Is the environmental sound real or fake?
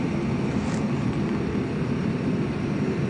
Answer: real